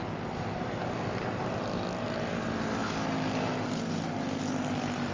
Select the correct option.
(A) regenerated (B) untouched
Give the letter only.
B